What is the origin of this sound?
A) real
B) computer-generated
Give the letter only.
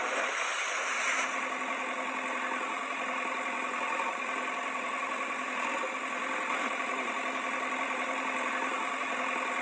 B